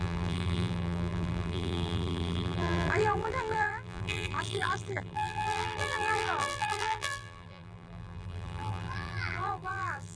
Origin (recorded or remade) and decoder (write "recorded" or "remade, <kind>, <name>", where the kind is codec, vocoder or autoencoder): remade, vocoder, BigVGAN v2